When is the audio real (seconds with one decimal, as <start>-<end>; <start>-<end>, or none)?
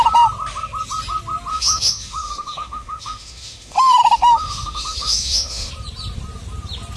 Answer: 0.0-1.5; 5.7-7.0